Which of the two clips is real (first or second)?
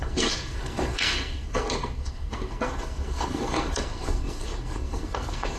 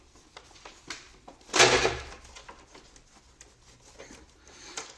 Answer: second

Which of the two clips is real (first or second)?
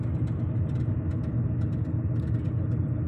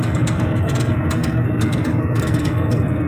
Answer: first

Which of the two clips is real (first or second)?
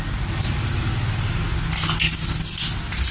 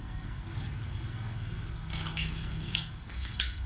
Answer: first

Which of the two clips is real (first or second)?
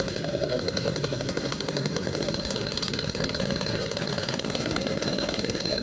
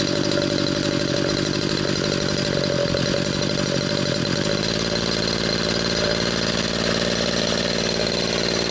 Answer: second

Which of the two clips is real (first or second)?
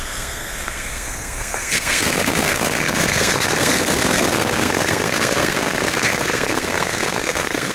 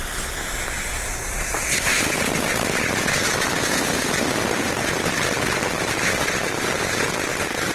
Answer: second